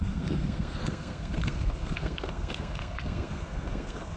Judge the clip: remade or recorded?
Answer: remade